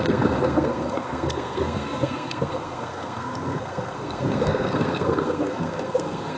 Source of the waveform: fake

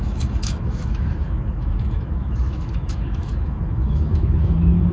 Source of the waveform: fake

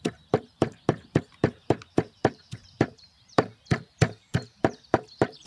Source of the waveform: fake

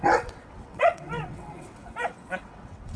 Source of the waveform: fake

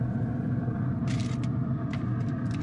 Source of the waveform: real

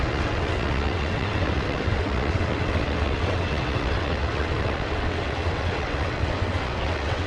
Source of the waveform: fake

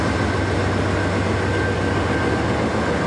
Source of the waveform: real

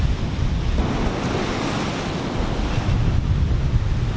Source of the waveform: real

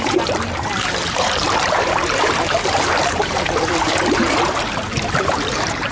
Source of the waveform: fake